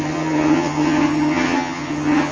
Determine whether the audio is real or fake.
fake